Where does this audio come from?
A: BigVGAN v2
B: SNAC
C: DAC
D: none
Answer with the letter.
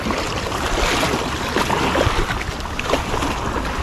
D